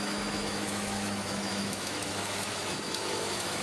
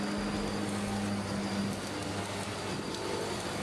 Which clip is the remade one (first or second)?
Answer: first